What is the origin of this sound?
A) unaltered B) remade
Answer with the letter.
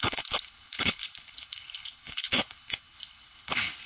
B